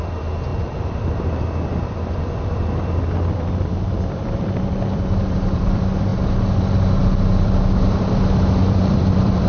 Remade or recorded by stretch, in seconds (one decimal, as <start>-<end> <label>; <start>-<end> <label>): 0.0-6.1 remade; 6.1-7.0 recorded; 7.0-9.5 remade